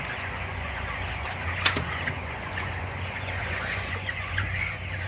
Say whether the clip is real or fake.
fake